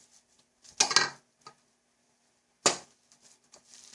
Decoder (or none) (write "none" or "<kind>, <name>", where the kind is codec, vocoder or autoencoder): none